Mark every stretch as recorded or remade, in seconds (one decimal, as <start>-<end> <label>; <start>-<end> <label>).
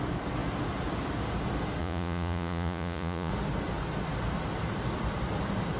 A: 0.0-1.8 recorded; 1.8-3.3 remade; 3.3-5.8 recorded